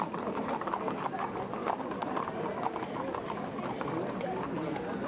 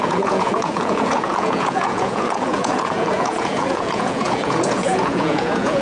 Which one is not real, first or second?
second